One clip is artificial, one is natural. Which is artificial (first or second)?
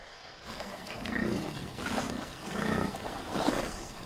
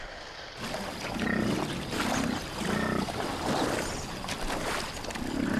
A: first